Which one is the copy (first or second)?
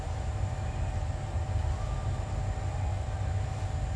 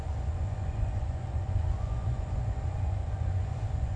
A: second